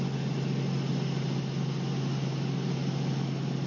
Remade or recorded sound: recorded